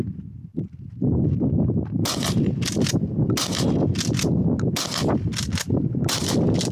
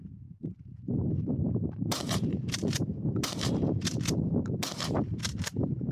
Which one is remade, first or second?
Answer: second